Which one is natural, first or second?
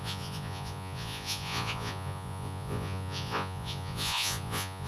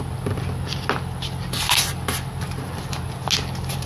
second